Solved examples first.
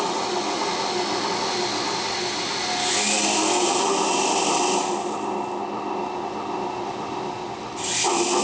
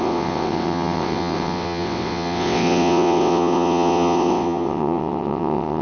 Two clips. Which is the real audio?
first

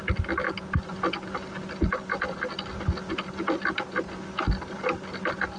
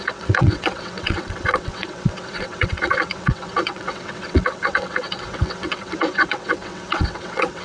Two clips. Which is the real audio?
first